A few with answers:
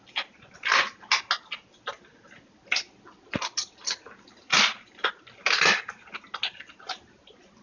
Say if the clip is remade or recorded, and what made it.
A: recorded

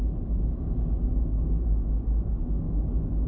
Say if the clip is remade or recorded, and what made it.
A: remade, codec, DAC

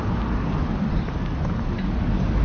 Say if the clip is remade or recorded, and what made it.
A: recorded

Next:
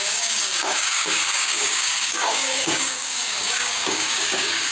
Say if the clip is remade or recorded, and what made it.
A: remade, codec, DAC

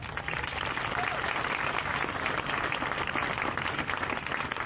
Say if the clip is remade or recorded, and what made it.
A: recorded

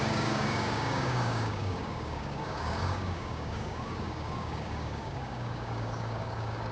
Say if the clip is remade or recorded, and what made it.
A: remade, codec, DAC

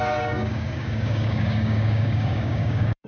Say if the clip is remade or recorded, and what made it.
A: remade, codec, DAC